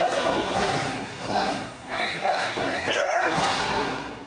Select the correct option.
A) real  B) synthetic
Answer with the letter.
B